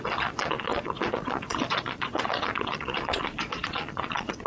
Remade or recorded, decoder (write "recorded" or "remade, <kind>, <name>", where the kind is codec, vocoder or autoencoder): remade, vocoder, Vocos